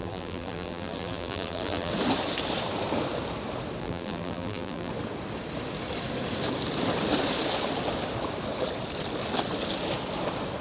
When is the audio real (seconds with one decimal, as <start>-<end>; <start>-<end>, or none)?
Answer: 1.9-3.8; 4.9-10.6